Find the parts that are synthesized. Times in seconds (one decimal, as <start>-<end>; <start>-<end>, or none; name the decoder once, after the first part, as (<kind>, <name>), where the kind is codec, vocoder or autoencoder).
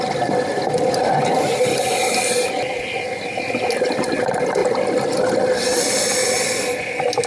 none